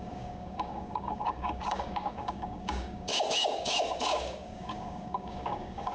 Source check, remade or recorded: remade